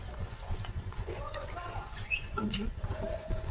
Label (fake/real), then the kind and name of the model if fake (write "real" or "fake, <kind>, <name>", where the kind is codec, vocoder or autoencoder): fake, vocoder, Vocos